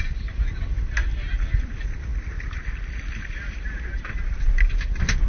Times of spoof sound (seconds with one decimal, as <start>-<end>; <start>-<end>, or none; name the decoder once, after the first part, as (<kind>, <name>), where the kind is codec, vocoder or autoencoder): none